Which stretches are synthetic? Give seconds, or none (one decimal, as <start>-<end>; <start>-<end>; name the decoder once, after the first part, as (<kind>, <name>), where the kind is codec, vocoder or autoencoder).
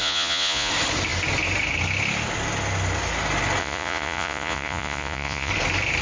0.0-0.7 (vocoder, Vocos); 3.6-5.5